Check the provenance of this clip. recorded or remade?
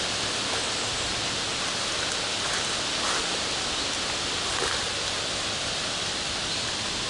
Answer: recorded